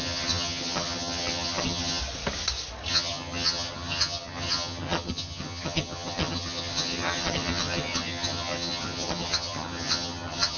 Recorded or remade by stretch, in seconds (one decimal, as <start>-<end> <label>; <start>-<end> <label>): 0.0-2.0 remade; 2.0-2.9 recorded; 2.9-10.6 remade